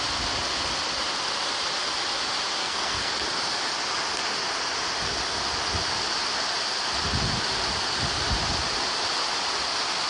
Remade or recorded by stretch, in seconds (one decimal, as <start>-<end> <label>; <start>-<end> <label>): 0.0-2.6 recorded; 2.6-3.1 remade; 3.1-10.1 recorded